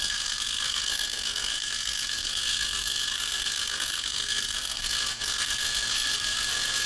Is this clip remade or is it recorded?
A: remade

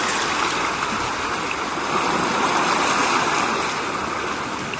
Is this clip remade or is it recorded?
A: recorded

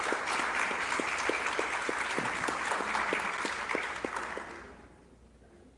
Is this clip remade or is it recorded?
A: recorded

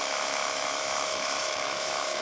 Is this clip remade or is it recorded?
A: remade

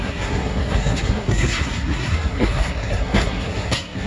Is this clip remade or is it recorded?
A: remade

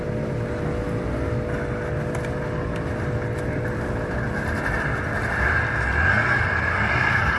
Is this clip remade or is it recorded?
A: recorded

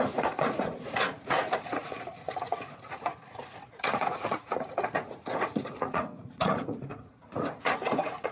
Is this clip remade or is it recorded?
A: remade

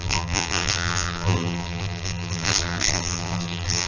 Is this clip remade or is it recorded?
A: remade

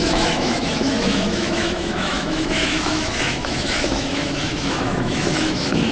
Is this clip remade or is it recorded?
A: remade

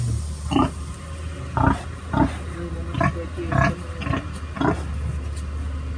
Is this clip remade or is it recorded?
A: recorded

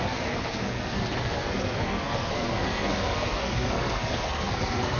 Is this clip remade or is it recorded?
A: remade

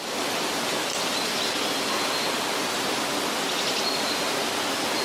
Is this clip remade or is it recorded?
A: recorded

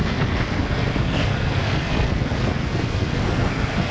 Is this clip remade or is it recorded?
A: remade